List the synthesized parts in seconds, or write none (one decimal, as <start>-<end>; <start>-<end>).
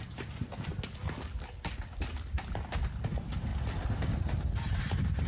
0.0-0.7; 2.7-3.5; 4.2-5.3